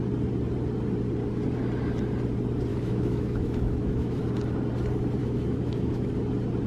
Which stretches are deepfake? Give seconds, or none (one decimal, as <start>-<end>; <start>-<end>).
2.7-4.2; 5.2-6.1